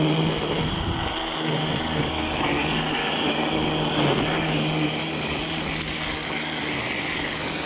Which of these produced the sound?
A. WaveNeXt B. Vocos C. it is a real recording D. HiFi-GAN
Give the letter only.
C